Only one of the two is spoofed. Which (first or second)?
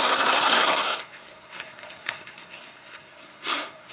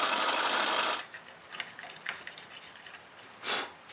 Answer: first